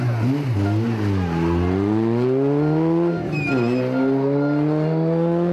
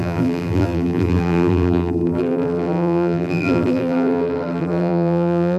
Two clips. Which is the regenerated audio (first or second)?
second